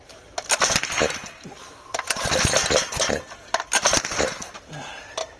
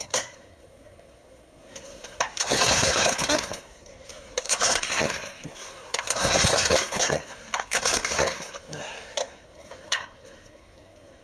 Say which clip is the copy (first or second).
second